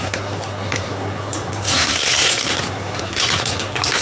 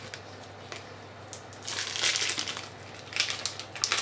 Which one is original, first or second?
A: second